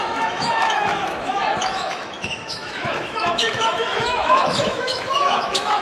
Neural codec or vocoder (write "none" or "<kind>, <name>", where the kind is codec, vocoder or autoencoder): autoencoder, DAC-VAE